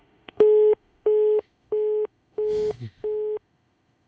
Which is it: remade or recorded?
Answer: remade